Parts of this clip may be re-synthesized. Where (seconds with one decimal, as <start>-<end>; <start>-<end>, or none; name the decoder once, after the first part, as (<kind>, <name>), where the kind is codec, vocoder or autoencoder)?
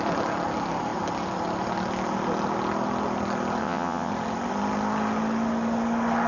3.6-4.1 (vocoder, WaveNeXt)